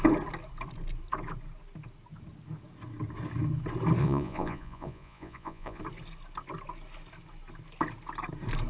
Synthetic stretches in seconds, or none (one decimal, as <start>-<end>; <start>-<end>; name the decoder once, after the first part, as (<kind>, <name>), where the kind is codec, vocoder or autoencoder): 4.0-5.8 (vocoder, Vocos)